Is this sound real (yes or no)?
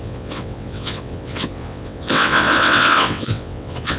no